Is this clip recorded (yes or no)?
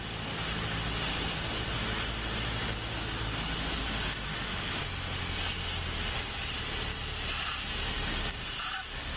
yes